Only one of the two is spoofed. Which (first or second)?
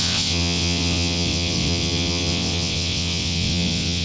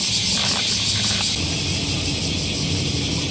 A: first